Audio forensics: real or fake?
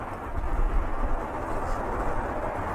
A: real